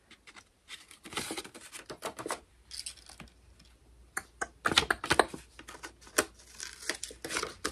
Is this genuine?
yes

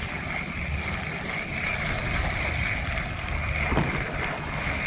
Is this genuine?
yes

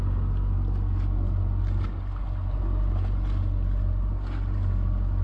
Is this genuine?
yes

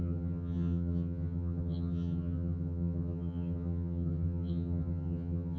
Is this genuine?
no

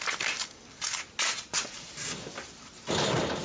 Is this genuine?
yes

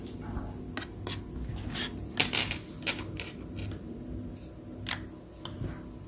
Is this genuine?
yes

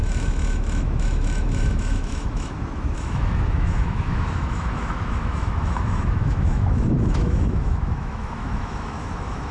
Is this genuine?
no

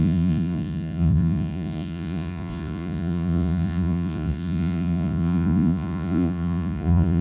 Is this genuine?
no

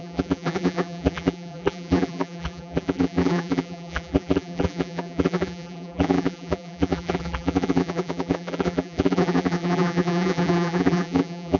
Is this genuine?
no